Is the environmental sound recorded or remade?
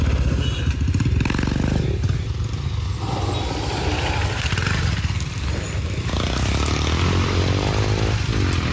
recorded